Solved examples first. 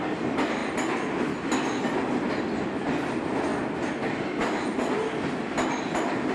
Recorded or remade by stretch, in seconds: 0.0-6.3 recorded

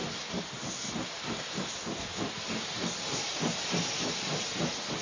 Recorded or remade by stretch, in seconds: 0.0-5.0 recorded